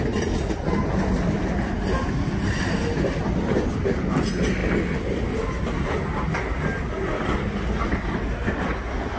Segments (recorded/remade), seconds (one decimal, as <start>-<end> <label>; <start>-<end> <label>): 0.0-9.2 recorded